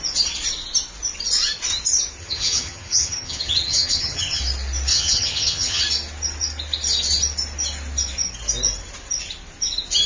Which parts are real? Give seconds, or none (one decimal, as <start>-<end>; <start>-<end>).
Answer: 0.0-2.2; 4.4-4.9; 5.8-10.1